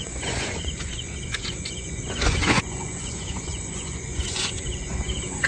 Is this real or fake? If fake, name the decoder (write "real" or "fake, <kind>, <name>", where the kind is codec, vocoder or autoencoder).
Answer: fake, vocoder, Vocos